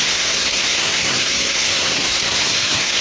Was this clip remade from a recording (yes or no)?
yes